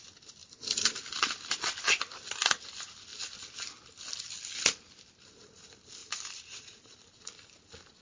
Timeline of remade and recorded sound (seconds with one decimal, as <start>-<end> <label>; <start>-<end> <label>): 0.0-0.4 recorded; 0.4-1.2 remade; 1.2-6.0 recorded; 6.0-7.0 remade; 7.0-8.0 recorded